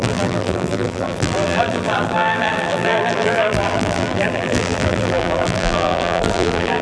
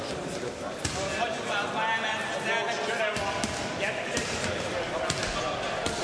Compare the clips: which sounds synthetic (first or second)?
first